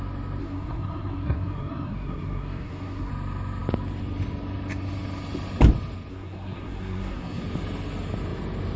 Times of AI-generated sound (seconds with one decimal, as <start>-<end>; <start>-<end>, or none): 0.4-3.1; 6.1-7.4